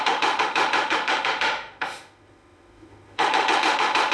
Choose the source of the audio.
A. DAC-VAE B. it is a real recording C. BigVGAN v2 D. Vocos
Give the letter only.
A